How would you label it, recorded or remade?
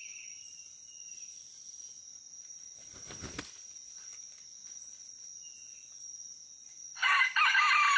recorded